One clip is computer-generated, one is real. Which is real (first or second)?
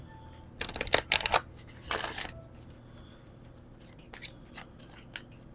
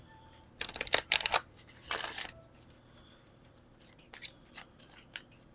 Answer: first